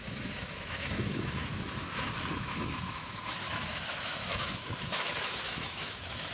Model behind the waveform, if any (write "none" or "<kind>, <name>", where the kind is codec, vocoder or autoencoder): autoencoder, DAC-VAE